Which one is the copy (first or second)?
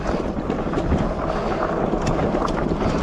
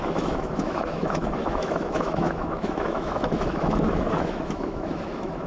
second